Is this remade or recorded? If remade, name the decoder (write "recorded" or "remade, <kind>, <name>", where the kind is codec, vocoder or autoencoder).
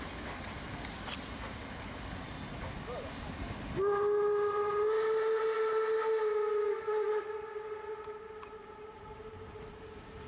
recorded